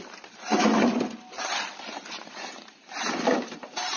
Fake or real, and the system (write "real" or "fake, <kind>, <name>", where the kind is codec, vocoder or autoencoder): fake, vocoder, BigVGAN v2